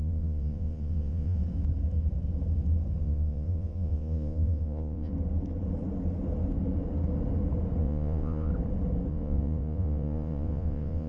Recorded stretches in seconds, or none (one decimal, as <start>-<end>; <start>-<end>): 1.4-3.0; 5.1-7.8; 8.5-9.1